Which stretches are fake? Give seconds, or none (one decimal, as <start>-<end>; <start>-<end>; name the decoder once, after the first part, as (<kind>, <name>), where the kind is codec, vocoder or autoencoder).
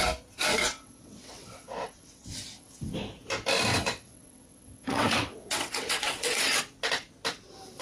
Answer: 0.5-2.9 (vocoder, WaveNeXt); 3.7-6.6